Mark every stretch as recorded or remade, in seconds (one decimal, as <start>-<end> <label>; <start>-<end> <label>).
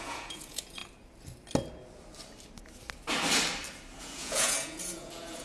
0.0-0.8 remade; 0.8-4.0 recorded; 4.0-5.4 remade